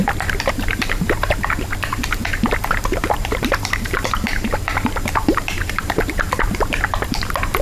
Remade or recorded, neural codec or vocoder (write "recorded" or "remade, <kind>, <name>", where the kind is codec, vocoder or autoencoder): remade, vocoder, BigVGAN v2